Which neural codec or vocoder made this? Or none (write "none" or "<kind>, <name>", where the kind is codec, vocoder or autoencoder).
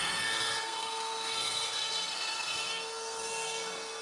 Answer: codec, SNAC